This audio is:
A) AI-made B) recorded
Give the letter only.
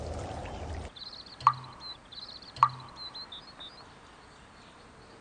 B